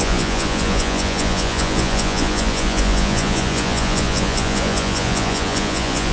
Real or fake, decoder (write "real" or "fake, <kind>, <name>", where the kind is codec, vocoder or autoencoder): fake, vocoder, Vocos